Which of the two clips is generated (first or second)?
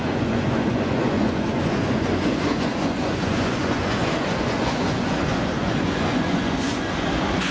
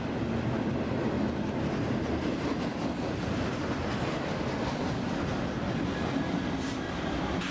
first